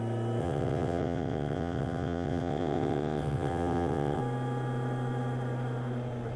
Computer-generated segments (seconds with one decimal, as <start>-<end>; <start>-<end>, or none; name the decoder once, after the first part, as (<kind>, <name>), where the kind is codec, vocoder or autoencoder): 0.4-4.2 (vocoder, WaveNeXt)